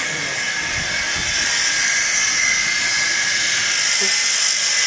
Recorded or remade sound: recorded